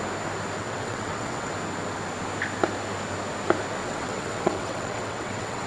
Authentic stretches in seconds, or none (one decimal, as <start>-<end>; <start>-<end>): 0.0-0.6; 1.5-3.8